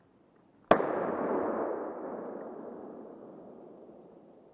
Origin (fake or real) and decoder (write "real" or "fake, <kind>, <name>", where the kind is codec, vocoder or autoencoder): real